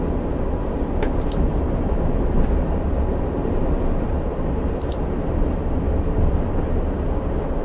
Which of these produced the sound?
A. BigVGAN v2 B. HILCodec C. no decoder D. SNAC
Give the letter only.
C